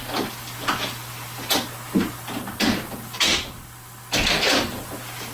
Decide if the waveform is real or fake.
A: real